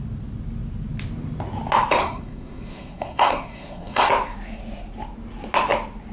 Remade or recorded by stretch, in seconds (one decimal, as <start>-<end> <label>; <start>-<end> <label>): 0.0-2.0 recorded; 2.0-4.1 remade; 4.1-6.1 recorded